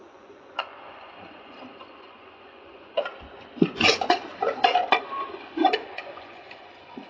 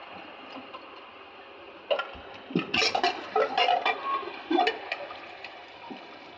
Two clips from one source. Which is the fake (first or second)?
first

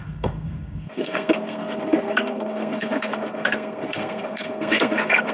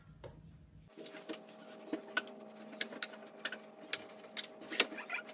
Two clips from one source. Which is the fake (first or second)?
first